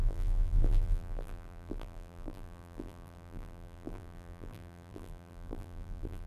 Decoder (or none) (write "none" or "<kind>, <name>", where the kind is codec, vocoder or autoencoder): vocoder, BigVGAN v2